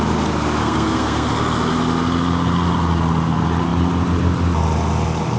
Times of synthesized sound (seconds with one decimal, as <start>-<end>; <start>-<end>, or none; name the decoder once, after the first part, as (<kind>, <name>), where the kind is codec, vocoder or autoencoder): 0.6-1.3 (codec, SNAC)